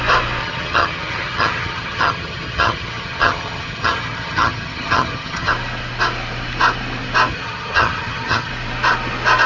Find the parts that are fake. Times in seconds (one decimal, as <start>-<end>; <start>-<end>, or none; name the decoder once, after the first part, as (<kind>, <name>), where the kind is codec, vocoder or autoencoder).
0.4-5.5 (vocoder, HiFi-GAN); 7.3-8.5